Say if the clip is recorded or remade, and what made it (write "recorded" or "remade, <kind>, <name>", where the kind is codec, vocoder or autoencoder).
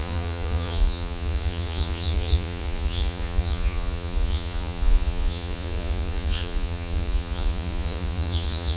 remade, vocoder, Vocos